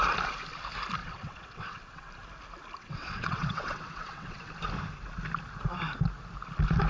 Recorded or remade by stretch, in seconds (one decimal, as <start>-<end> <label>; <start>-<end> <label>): 0.0-1.0 recorded; 1.0-2.1 remade; 2.1-2.8 recorded; 2.8-4.5 remade; 4.5-6.9 recorded